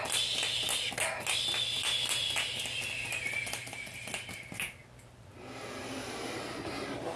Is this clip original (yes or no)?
yes